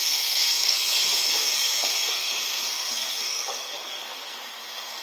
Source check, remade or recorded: remade